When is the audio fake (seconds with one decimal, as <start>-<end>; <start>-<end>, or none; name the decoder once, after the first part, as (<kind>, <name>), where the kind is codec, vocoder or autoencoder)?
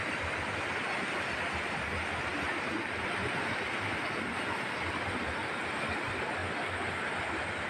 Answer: none